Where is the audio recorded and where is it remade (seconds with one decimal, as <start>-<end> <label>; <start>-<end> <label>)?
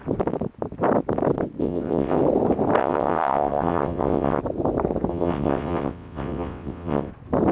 0.0-1.6 recorded; 1.6-2.2 remade; 2.2-2.8 recorded; 2.8-4.4 remade; 4.4-5.1 recorded; 5.1-7.1 remade; 7.1-7.5 recorded